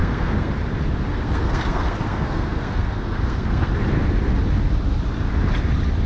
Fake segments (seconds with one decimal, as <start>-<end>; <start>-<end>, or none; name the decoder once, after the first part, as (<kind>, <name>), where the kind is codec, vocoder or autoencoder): 0.0-0.5 (codec, SNAC); 1.1-3.7